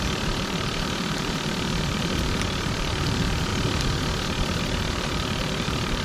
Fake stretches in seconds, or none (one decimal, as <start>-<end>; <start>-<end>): 0.0-3.5; 4.6-6.0